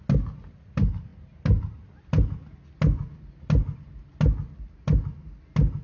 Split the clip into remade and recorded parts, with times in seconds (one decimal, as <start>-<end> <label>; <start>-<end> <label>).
0.0-5.8 recorded